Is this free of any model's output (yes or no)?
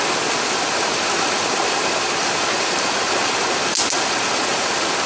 yes